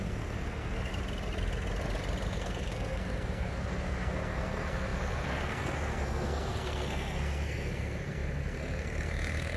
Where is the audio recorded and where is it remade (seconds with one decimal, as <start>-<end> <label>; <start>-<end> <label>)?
0.0-0.9 remade; 0.9-2.3 recorded; 2.3-9.6 remade